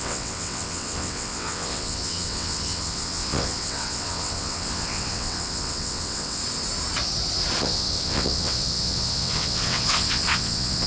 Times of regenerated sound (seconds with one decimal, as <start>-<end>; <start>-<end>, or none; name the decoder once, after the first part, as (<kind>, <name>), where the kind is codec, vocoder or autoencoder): 0.0-6.4 (vocoder, WaveNeXt); 7.6-10.9